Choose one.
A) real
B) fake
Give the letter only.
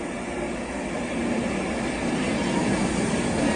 A